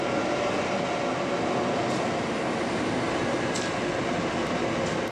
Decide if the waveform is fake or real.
real